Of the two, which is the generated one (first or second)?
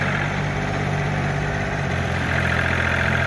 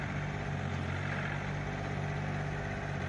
first